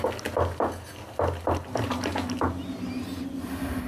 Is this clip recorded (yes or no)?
yes